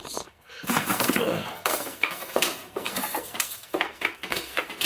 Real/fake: fake